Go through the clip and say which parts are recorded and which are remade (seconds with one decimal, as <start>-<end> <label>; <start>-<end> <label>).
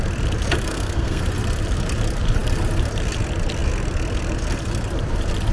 0.0-0.7 recorded; 0.7-1.2 remade; 1.2-5.5 recorded